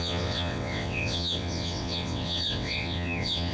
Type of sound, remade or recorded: remade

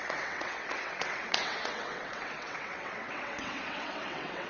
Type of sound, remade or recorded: remade